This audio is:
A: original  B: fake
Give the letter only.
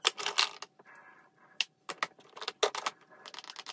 A